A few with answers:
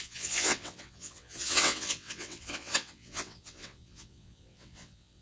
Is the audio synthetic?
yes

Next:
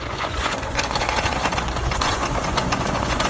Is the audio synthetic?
yes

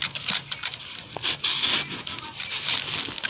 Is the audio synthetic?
no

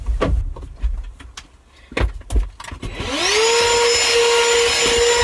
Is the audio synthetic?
no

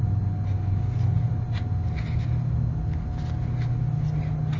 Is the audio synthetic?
no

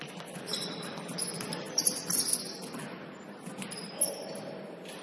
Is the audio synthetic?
no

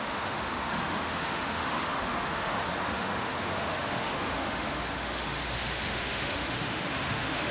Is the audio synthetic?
yes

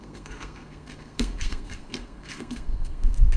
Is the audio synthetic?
yes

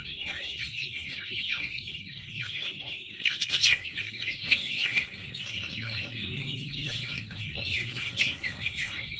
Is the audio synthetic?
yes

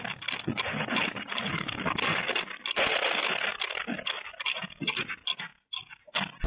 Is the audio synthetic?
no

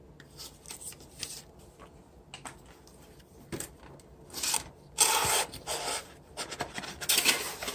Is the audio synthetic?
no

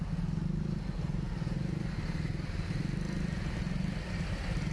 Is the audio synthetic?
no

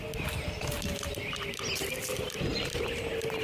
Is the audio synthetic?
no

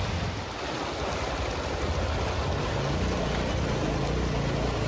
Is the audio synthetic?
no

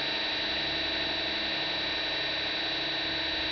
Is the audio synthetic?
no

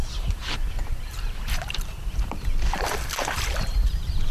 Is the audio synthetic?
yes